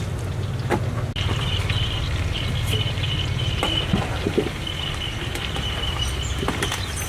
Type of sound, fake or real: real